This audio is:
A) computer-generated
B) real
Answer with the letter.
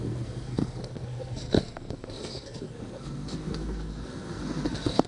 A